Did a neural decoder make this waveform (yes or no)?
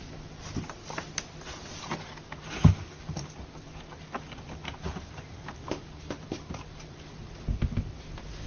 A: no